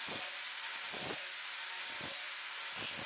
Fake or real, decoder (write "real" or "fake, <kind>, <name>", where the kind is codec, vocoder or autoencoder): real